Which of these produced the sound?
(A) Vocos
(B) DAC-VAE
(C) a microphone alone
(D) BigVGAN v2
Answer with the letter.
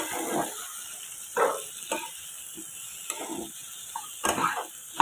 C